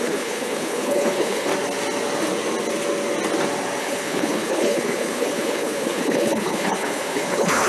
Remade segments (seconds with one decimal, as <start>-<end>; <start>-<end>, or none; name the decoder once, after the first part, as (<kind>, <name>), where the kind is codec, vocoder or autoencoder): 0.0-1.5 (codec, HILCodec); 3.8-7.7